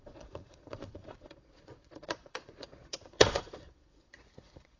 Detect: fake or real fake